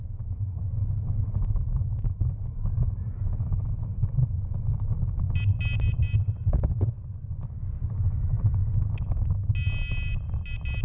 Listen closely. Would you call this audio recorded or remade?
recorded